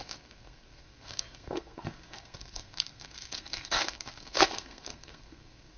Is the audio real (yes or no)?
no